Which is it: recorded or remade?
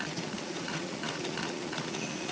remade